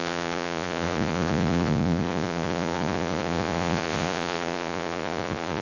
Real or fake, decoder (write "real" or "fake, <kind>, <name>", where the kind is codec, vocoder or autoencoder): fake, vocoder, Vocos